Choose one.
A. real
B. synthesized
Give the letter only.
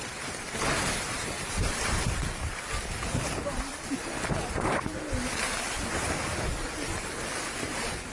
A